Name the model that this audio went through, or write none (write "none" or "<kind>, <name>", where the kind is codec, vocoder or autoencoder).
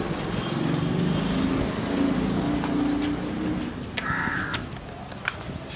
none